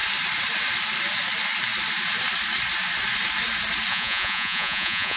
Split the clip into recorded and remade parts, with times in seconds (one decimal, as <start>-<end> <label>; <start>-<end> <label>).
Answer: 0.0-3.9 recorded; 3.9-5.2 remade